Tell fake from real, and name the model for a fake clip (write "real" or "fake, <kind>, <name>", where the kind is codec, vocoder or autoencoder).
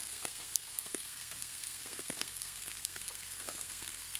fake, codec, SNAC